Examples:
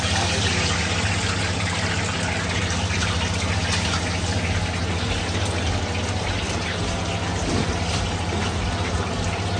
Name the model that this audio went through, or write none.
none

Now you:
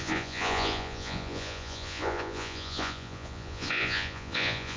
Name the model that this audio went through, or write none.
vocoder, Vocos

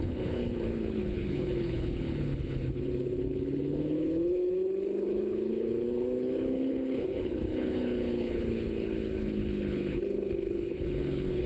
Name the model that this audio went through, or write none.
codec, HILCodec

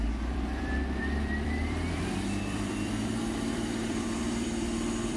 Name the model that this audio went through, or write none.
vocoder, BigVGAN v2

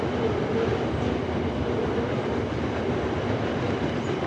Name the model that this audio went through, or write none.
none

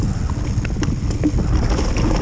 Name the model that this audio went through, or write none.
none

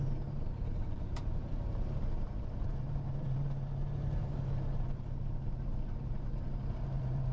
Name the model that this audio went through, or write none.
vocoder, BigVGAN v2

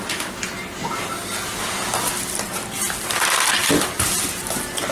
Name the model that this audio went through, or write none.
none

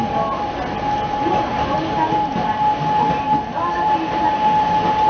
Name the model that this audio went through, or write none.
none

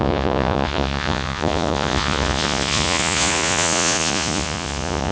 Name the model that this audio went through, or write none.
vocoder, Vocos